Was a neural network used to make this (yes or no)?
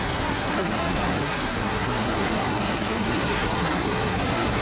yes